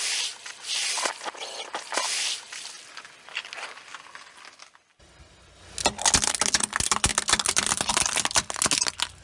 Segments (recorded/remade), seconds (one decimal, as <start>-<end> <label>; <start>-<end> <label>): 0.0-9.2 recorded